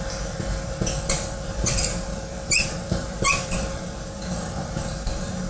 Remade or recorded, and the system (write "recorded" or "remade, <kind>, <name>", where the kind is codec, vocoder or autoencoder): remade, vocoder, BigVGAN v2